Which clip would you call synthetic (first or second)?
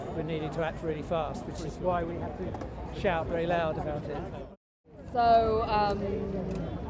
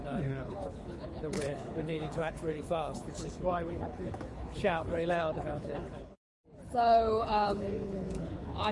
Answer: second